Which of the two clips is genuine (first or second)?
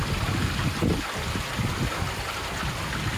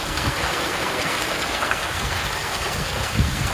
first